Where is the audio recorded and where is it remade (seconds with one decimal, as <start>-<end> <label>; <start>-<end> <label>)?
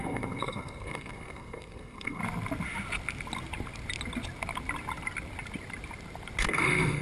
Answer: 0.0-2.2 remade; 2.2-6.4 recorded; 6.4-7.0 remade